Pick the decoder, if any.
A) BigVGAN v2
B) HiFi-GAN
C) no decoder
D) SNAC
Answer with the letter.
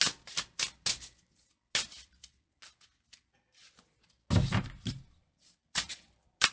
C